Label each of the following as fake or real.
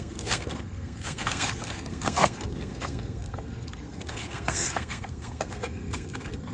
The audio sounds fake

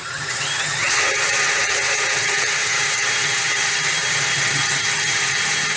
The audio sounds fake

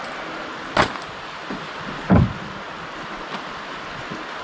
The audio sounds real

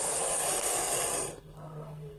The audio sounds fake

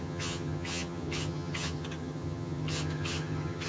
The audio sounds fake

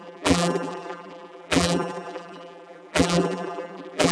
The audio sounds fake